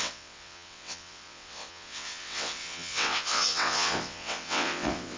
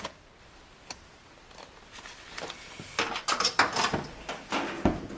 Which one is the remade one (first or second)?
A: first